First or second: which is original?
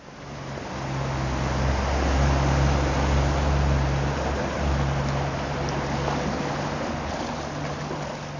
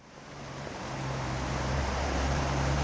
first